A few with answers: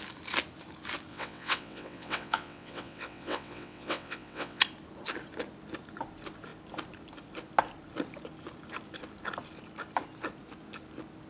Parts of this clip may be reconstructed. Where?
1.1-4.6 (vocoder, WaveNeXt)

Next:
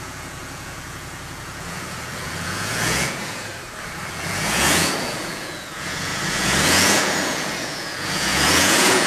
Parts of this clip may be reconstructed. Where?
0.0-3.5 (vocoder, Vocos); 4.1-9.1